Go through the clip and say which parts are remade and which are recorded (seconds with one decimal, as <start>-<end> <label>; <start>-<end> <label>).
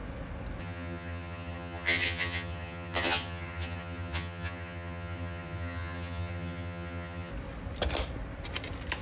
0.0-0.6 recorded; 0.6-7.3 remade; 7.3-9.0 recorded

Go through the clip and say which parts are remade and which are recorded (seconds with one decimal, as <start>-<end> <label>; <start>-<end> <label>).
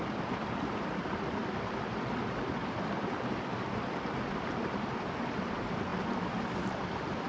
0.0-7.3 recorded